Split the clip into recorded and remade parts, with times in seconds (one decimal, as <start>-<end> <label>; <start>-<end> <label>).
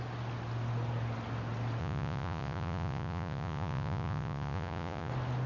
0.0-1.8 recorded; 1.8-5.1 remade; 5.1-5.5 recorded